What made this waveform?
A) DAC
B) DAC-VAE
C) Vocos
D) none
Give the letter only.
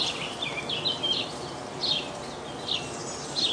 D